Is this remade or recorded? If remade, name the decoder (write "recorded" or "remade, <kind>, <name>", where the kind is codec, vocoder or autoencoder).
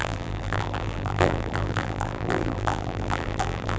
remade, vocoder, BigVGAN v2